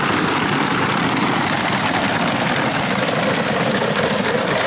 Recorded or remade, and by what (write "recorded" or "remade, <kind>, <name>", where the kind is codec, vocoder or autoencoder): recorded